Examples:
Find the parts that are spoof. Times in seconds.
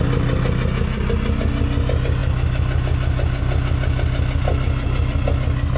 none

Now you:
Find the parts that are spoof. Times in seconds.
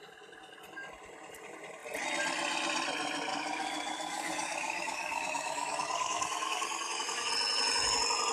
3.3-7.3 (codec, DAC)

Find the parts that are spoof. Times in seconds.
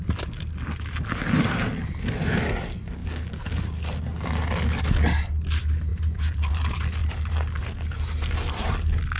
5.9-6.5 (vocoder, BigVGAN v2)